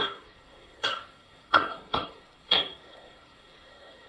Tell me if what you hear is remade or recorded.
remade